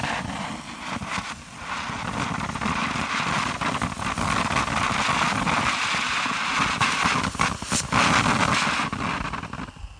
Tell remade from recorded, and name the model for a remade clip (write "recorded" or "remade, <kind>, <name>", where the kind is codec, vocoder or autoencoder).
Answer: recorded